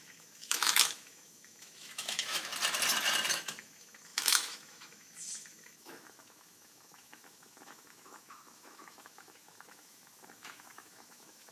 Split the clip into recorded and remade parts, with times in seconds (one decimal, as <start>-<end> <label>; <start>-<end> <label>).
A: 0.0-2.5 remade; 2.5-3.3 recorded; 3.3-11.5 remade